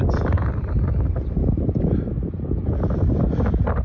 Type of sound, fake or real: real